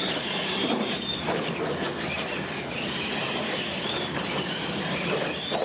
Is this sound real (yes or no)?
yes